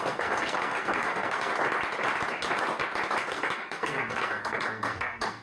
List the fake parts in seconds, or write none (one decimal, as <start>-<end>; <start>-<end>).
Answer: 0.0-1.5; 3.3-5.4